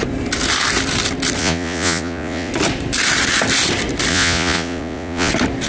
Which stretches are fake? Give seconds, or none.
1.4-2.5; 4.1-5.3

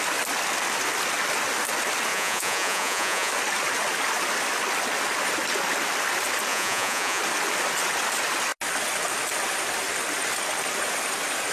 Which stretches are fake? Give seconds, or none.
2.1-3.3; 6.5-7.2

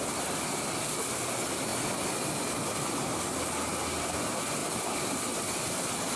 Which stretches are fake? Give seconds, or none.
none